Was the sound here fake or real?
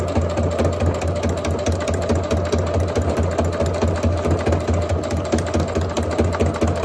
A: real